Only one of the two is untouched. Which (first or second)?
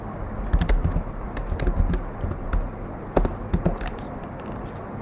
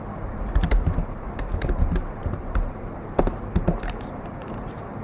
first